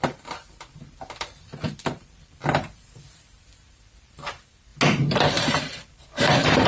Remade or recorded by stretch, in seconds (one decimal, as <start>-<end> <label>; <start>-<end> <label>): 0.0-4.7 remade; 4.7-5.2 recorded; 5.2-6.7 remade

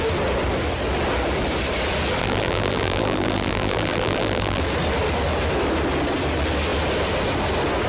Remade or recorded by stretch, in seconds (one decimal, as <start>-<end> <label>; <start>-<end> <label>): 0.0-2.2 recorded; 2.2-4.6 remade; 4.6-7.9 recorded

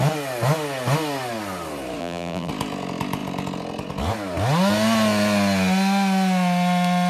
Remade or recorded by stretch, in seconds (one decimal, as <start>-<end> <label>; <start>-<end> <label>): 0.0-2.0 recorded; 2.0-2.5 remade; 2.5-7.1 recorded

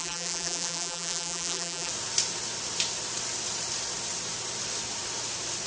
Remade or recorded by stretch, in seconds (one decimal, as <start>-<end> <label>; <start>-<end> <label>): 0.0-1.9 remade; 1.9-5.7 recorded

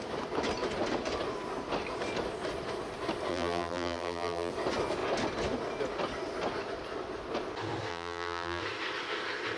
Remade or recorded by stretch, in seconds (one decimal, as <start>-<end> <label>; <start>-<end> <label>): 0.0-3.3 recorded; 3.3-4.5 remade; 4.5-7.9 recorded; 7.9-8.6 remade; 8.6-9.6 recorded

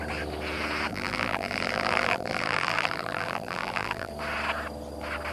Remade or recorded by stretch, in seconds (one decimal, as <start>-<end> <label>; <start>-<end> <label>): 0.0-0.9 recorded; 0.9-4.1 remade; 4.1-5.3 recorded